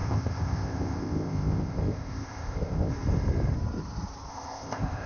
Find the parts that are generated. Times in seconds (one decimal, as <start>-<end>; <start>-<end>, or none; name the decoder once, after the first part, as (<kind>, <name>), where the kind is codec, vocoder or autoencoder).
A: 0.0-2.9 (codec, ZipCodec); 4.3-5.1